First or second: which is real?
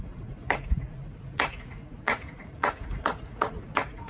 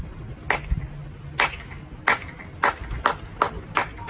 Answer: second